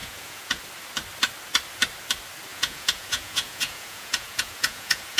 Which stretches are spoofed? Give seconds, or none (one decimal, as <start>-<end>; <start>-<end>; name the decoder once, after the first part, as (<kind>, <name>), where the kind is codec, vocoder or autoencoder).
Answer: 0.0-0.6 (vocoder, Vocos); 2.5-5.2